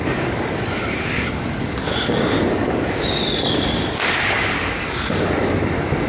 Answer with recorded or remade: remade